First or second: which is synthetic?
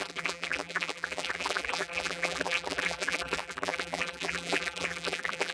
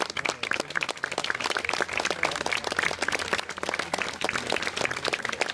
first